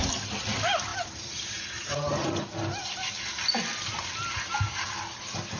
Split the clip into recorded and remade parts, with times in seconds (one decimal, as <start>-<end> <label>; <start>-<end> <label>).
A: 0.0-0.9 recorded; 0.9-2.3 remade; 2.3-5.6 recorded